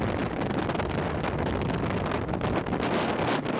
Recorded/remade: recorded